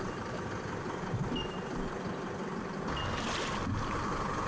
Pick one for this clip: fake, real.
real